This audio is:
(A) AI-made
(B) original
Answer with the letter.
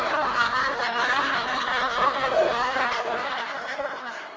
A